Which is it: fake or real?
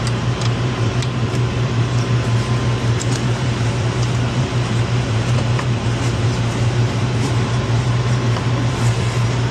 fake